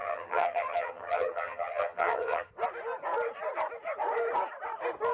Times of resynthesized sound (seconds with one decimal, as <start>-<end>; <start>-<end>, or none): 0.0-2.5